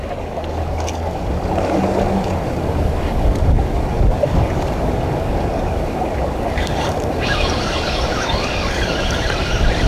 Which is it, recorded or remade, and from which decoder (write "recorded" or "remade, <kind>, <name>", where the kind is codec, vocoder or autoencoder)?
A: remade, codec, DAC